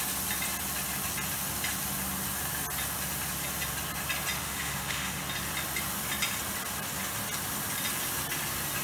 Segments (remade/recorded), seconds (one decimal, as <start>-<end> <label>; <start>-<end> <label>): 0.0-4.4 recorded; 4.4-5.2 remade; 5.2-8.8 recorded